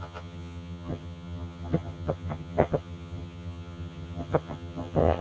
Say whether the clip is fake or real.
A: fake